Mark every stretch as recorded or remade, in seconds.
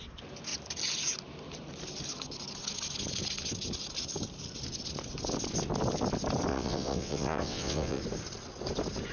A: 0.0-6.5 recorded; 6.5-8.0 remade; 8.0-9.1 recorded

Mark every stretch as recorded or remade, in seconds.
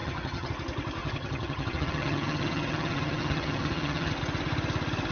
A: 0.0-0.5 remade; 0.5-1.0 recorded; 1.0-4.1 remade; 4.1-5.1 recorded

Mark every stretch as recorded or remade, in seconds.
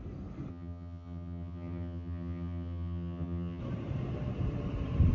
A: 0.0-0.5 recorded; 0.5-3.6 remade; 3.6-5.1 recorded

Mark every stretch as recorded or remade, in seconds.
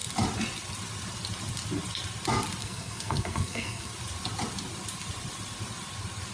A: 0.0-2.6 recorded; 2.6-3.9 remade; 3.9-6.3 recorded